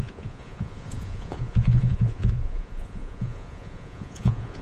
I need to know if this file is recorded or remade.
remade